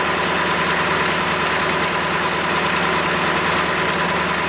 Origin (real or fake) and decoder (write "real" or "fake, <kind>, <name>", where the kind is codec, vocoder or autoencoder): real